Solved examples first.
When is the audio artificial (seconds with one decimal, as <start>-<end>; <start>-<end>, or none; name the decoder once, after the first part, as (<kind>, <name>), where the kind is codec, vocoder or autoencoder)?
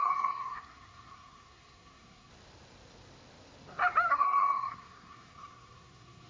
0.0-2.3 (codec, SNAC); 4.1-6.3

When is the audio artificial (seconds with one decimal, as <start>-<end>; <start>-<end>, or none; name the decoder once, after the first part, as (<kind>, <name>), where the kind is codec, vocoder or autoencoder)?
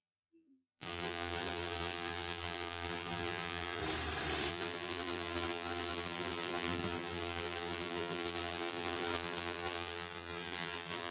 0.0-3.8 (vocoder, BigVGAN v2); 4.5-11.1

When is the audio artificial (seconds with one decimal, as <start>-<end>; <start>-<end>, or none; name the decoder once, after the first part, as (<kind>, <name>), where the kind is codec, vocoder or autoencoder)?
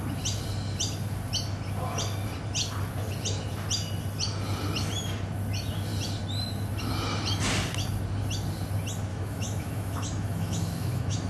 9.1-11.3 (autoencoder, DAC-VAE)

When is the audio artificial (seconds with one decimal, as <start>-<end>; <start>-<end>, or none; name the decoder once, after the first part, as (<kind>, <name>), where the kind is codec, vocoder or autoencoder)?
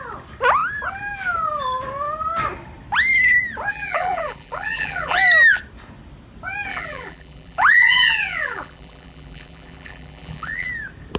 3.7-5.2 (vocoder, BigVGAN v2); 6.7-10.7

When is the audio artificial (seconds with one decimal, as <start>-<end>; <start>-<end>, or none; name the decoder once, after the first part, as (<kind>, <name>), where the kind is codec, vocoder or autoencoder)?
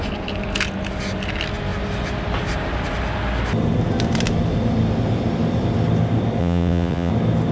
6.4-7.1 (vocoder, WaveNeXt)